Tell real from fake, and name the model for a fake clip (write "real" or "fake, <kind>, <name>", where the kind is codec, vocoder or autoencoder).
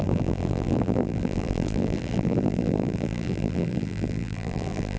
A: fake, vocoder, BigVGAN v2